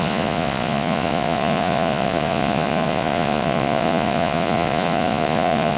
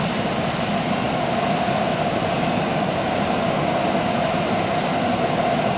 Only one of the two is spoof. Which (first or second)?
first